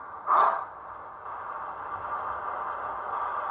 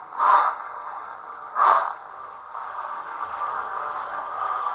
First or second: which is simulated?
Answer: second